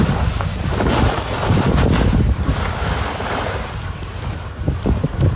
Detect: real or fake real